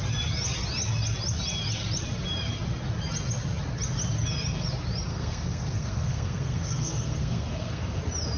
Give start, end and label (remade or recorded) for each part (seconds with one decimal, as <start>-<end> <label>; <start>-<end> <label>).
0.0-5.1 recorded; 5.1-8.0 remade; 8.0-8.4 recorded